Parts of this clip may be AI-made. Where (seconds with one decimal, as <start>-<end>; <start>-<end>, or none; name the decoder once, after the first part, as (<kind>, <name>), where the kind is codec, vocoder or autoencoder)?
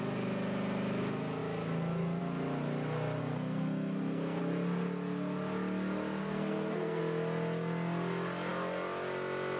3.2-4.4 (codec, SNAC); 6.2-7.0